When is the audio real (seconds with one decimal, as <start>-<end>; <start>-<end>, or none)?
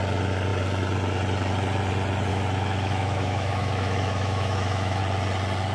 0.0-2.3; 5.0-5.7